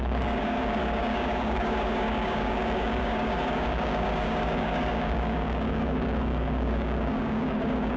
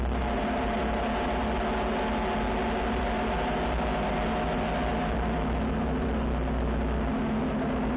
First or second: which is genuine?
second